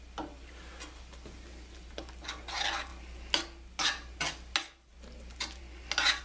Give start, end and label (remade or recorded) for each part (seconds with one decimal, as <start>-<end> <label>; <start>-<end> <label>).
0.0-6.2 recorded